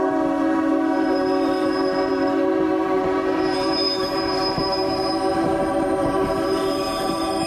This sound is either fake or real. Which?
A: fake